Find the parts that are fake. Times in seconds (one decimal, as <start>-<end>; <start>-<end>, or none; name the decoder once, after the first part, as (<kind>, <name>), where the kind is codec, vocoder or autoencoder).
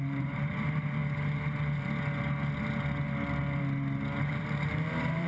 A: 0.0-1.0 (vocoder, BigVGAN v2); 4.2-5.3